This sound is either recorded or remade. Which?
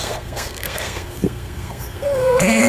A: remade